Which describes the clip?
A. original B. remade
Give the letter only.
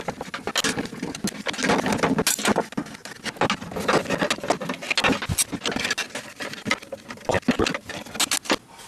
A